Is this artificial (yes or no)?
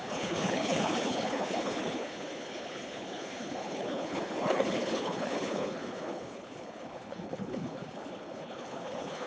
yes